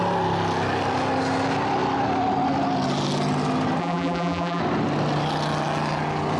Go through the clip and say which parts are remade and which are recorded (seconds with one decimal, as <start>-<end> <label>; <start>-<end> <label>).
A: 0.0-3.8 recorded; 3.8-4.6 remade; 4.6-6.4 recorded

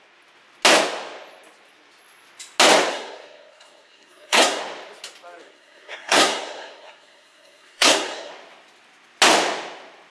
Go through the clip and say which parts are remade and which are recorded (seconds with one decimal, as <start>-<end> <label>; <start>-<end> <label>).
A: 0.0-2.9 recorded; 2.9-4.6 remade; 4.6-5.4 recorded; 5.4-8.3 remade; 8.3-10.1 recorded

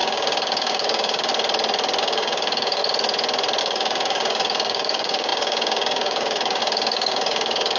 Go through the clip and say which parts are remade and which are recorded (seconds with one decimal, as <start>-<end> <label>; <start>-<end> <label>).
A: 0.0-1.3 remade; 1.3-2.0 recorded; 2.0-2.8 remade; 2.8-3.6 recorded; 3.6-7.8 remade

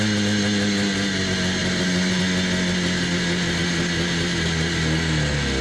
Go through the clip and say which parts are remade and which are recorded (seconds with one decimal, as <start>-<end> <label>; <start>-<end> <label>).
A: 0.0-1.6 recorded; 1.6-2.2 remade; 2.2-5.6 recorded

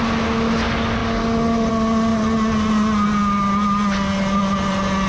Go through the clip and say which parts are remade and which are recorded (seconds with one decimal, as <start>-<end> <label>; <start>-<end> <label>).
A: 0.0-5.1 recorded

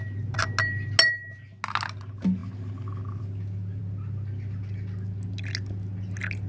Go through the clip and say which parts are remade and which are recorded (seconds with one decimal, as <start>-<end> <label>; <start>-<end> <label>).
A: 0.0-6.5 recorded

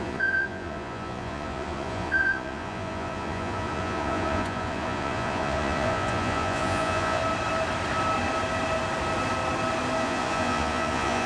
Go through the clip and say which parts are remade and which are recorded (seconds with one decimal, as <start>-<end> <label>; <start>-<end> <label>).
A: 0.0-7.2 remade; 7.2-10.0 recorded; 10.0-11.3 remade